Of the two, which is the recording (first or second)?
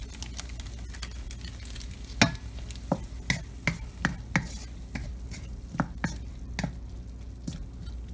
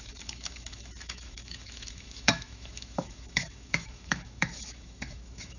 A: first